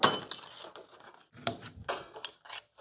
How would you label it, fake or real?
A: real